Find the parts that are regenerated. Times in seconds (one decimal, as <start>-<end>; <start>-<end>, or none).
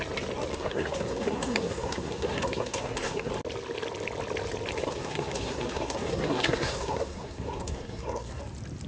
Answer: 0.5-3.3; 4.8-8.4